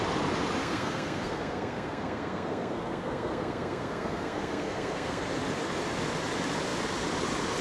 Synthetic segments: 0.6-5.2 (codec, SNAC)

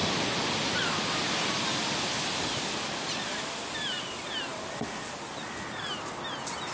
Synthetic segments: none

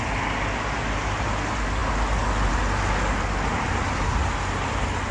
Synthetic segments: none

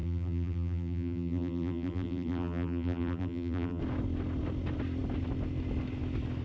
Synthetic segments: 0.0-3.8 (vocoder, BigVGAN v2)

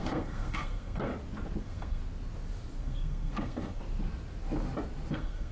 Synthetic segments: 0.0-1.1 (codec, SNAC); 1.6-2.0; 2.8-3.8; 5.1-5.5